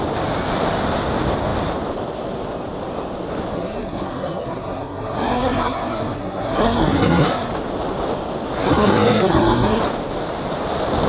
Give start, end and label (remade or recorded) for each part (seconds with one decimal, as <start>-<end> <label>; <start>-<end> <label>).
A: 0.0-3.5 recorded; 3.5-7.5 remade; 7.5-8.6 recorded; 8.6-9.8 remade; 9.8-11.1 recorded